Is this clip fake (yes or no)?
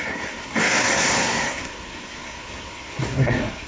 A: yes